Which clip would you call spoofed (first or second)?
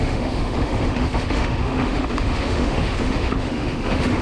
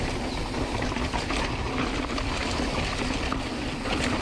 first